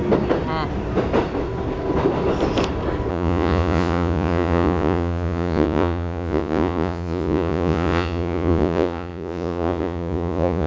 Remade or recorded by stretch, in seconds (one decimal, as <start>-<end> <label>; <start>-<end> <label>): 0.0-3.1 recorded; 3.1-10.7 remade